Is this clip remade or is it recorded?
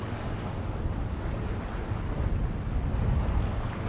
recorded